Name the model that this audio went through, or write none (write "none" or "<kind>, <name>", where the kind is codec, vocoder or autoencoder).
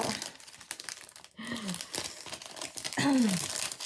none